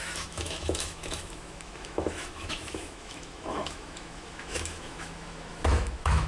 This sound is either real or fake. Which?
fake